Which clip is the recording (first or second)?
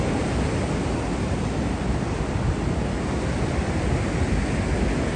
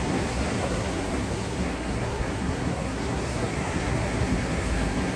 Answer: first